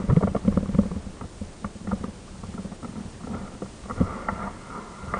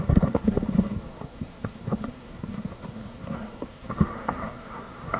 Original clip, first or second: first